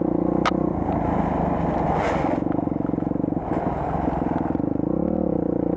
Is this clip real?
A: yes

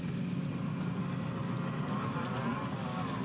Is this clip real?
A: yes